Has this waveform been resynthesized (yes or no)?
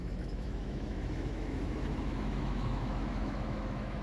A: yes